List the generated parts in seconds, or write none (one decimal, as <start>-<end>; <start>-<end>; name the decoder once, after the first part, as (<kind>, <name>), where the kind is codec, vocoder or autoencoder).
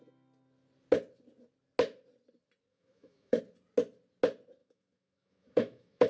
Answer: 2.7-3.4 (autoencoder, DAC-VAE); 4.6-6.1